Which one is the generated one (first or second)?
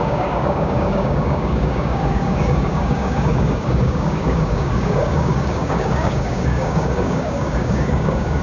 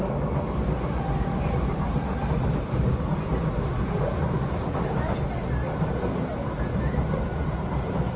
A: first